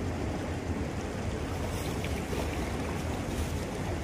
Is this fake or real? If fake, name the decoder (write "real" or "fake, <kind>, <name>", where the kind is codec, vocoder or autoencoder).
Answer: real